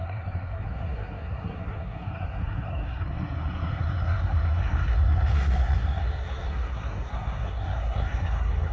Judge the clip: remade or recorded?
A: remade